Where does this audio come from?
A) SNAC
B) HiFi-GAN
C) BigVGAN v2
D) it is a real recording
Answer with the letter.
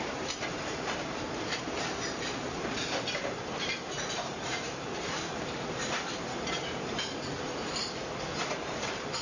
C